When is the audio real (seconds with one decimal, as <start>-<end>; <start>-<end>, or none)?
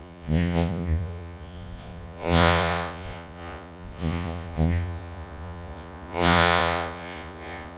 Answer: none